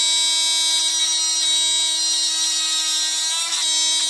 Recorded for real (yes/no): yes